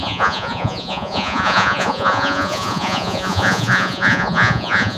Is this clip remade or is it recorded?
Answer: remade